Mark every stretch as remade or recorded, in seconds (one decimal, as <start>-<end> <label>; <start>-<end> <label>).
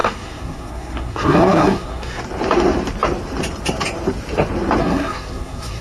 0.0-2.2 remade; 2.2-4.8 recorded; 4.8-5.8 remade